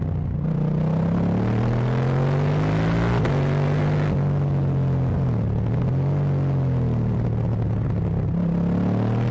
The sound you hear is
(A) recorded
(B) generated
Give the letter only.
A